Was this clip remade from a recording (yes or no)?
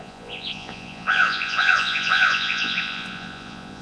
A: yes